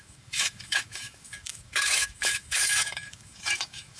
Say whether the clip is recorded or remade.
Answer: remade